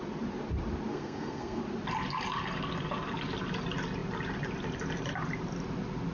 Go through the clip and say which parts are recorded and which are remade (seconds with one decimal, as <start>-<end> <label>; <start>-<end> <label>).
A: 0.0-0.9 recorded; 0.9-1.6 remade; 1.6-6.1 recorded